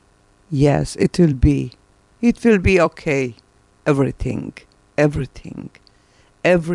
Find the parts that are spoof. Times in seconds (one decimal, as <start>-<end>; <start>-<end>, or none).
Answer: 0.0-5.2; 6.0-6.7